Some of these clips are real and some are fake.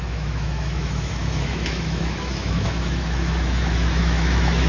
fake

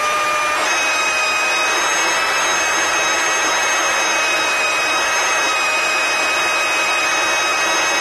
real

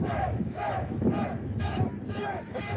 fake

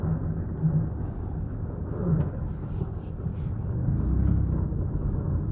real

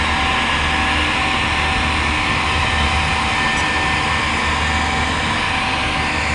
real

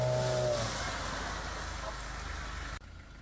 real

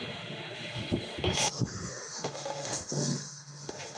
fake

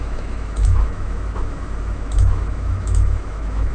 fake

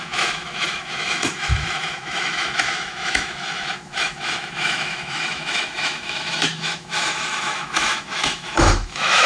fake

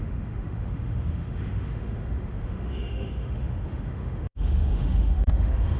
fake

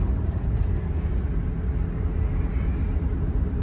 real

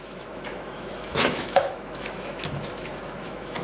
fake